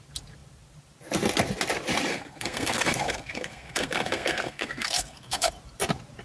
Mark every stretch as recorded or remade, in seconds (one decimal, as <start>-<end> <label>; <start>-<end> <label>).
0.0-2.1 recorded; 2.1-5.5 remade; 5.5-6.2 recorded